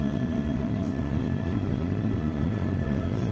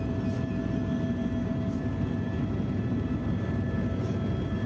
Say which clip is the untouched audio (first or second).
second